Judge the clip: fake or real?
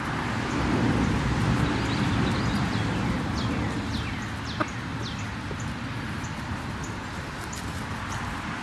real